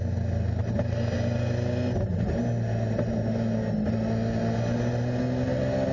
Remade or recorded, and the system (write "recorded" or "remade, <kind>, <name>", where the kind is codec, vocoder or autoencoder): recorded